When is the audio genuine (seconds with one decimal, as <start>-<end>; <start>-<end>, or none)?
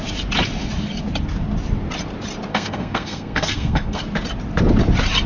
0.0-2.5; 4.0-5.3